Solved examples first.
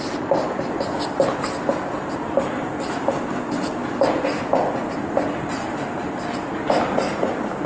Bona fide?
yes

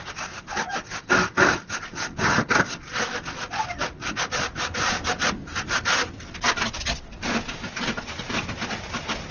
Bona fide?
yes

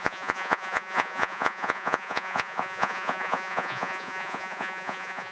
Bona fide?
no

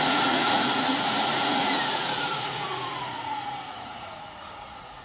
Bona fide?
no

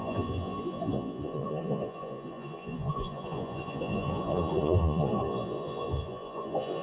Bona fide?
no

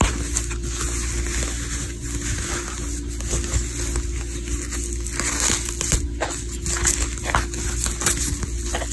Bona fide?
yes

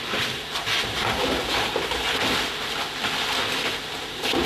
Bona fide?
yes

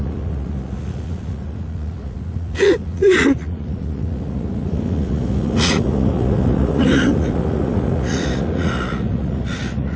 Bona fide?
no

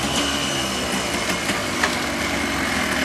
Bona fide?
yes